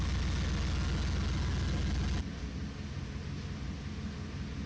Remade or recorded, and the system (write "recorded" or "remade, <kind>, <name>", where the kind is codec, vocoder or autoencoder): recorded